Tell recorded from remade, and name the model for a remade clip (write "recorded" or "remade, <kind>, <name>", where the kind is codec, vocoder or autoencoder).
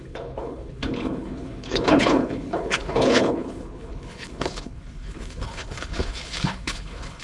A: remade, codec, HILCodec